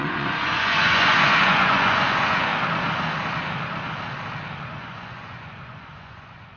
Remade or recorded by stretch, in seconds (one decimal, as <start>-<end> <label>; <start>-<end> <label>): 0.0-2.5 remade; 2.5-4.7 recorded; 4.7-6.6 remade